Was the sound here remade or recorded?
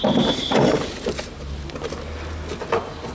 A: recorded